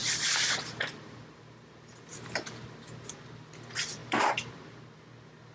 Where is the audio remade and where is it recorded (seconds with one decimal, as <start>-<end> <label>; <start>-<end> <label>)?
0.0-3.3 remade; 3.3-4.0 recorded; 4.0-4.8 remade; 4.8-5.5 recorded